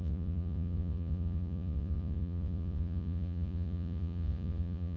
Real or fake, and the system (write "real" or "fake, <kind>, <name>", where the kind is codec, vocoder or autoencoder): fake, vocoder, Vocos